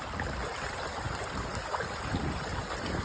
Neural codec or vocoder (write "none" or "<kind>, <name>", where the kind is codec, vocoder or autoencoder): none